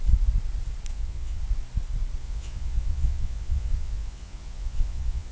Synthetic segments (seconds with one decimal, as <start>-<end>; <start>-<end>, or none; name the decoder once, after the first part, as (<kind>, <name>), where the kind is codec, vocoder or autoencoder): 0.9-1.4 (vocoder, Vocos); 2.2-5.3